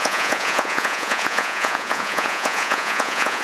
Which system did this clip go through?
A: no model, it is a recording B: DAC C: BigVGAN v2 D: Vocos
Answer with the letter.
D